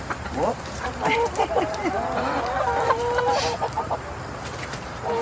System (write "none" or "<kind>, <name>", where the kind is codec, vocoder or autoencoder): vocoder, BigVGAN v2